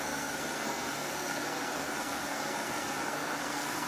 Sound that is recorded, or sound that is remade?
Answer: remade